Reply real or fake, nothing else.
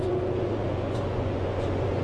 fake